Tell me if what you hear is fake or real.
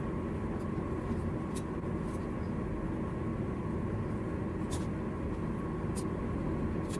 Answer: real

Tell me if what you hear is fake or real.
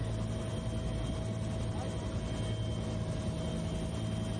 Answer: real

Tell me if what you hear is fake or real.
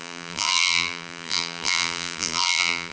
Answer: fake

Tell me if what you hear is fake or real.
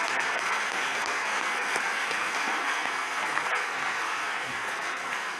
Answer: fake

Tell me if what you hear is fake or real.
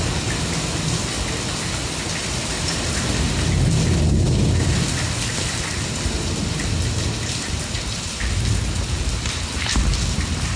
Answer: real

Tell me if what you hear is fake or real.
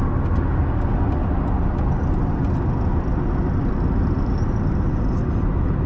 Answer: real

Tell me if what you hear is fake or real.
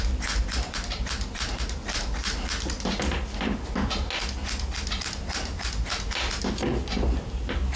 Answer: real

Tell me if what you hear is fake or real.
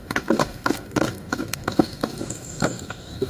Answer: fake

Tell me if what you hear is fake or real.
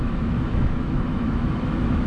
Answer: fake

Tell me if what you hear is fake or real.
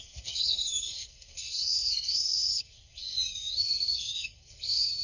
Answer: fake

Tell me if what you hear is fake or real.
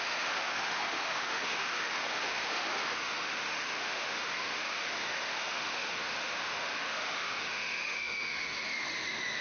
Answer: fake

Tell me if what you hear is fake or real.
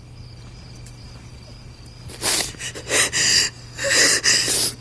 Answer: real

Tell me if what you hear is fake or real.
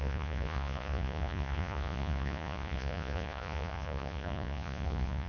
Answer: fake